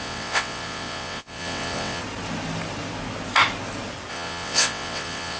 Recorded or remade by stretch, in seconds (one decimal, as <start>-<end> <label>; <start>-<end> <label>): 0.0-2.0 remade; 2.0-4.1 recorded; 4.1-5.4 remade